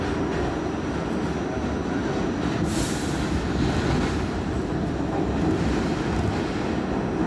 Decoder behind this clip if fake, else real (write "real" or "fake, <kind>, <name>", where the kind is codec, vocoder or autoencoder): real